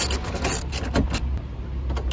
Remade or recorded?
recorded